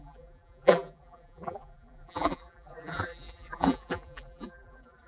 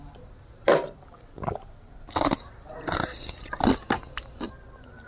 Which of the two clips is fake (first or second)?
first